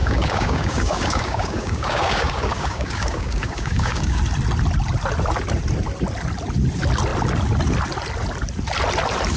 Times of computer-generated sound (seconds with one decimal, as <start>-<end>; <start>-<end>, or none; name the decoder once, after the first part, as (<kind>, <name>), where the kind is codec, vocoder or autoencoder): 0.0-4.2 (codec, DAC)